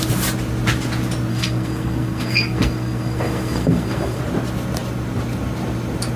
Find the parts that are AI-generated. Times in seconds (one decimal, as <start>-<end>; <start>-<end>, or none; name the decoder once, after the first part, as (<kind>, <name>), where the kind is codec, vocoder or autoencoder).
1.3-4.2 (codec, SNAC)